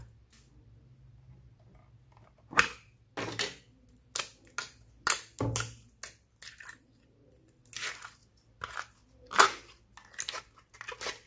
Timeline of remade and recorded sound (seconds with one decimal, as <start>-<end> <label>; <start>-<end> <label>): 0.0-11.3 recorded